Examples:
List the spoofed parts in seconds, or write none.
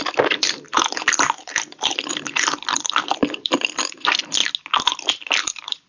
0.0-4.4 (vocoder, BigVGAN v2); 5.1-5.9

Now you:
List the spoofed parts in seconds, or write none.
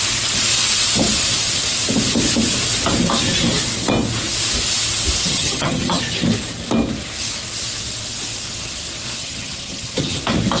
5.3-6.0 (vocoder, HiFi-GAN); 9.2-10.2